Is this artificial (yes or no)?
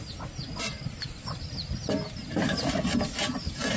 no